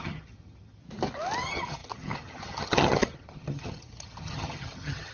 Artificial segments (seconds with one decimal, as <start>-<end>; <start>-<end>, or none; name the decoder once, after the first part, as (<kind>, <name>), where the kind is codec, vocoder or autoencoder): 0.0-0.8 (vocoder, HiFi-GAN); 1.4-5.1